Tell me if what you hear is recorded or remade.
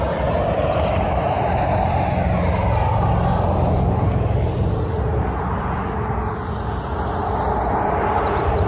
recorded